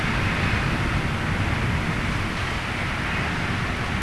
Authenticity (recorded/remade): recorded